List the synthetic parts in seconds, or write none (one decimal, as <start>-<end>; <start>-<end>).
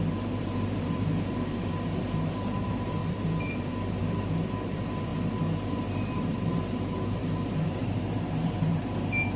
0.0-5.1; 5.7-9.4